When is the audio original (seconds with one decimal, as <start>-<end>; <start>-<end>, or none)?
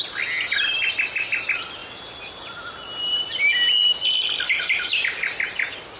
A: 0.0-6.0